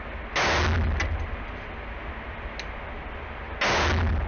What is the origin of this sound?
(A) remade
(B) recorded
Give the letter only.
B